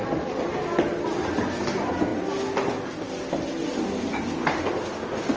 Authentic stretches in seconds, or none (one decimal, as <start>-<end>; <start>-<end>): 0.0-5.4